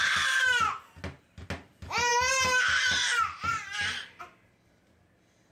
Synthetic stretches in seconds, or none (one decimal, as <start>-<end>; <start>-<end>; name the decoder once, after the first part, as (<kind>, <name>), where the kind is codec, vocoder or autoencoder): none